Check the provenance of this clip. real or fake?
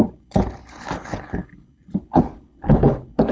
fake